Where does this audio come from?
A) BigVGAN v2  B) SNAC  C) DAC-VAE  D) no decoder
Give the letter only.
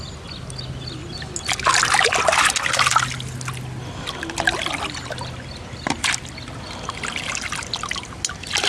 D